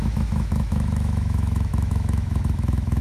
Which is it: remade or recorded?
remade